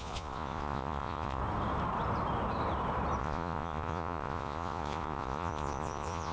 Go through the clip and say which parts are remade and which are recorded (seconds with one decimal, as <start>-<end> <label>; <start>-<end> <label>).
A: 0.0-1.4 remade; 1.4-3.2 recorded; 3.2-6.3 remade